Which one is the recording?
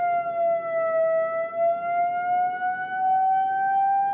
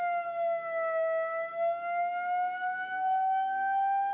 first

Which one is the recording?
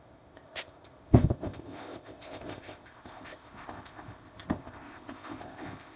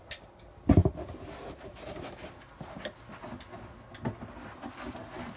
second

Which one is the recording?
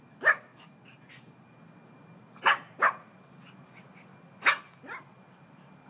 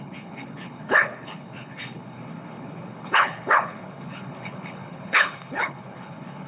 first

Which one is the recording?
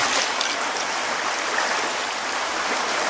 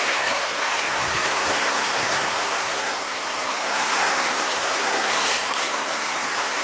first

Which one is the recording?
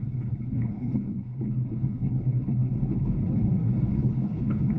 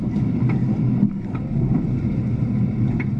second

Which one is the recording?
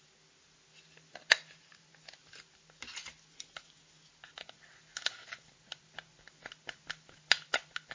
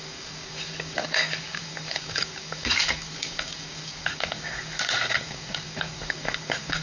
first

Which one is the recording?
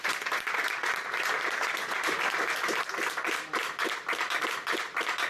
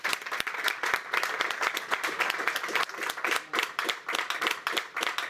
first